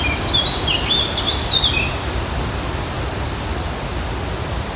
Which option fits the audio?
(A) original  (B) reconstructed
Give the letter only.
A